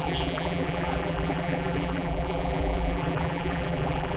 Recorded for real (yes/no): no